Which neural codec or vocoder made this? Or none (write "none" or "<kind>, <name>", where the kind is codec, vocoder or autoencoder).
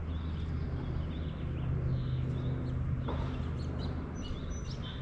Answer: none